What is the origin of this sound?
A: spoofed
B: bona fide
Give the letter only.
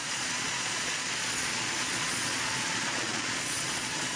A